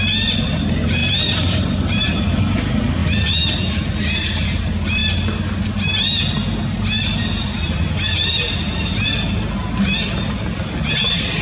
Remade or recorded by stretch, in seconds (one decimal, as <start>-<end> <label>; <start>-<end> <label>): 0.0-1.0 recorded; 1.0-2.2 remade; 2.2-11.4 recorded